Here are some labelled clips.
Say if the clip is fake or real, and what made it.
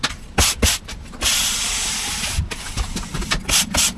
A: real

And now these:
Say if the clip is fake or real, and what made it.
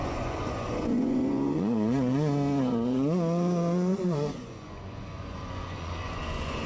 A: fake, vocoder, Vocos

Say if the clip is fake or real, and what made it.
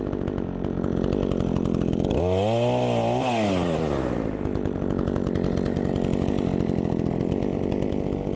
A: real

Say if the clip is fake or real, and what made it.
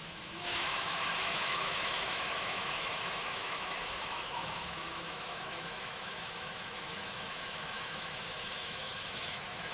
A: fake, autoencoder, DAC-VAE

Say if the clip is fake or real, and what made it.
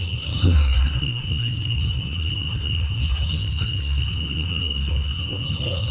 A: fake, codec, SNAC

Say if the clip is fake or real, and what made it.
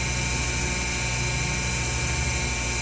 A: real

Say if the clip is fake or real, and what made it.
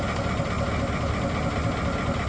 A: real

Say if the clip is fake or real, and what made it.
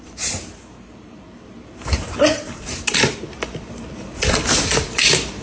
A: fake, vocoder, BigVGAN v2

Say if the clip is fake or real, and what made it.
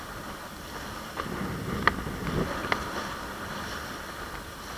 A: real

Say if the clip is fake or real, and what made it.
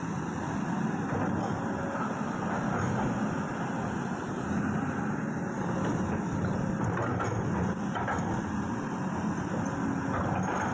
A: real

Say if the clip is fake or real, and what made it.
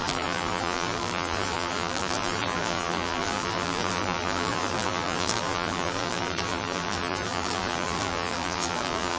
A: fake, vocoder, BigVGAN v2